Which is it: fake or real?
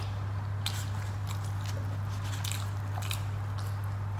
real